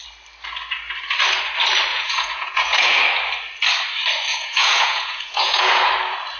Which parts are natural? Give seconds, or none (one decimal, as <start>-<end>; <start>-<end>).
0.0-1.9; 3.0-4.3; 5.8-6.4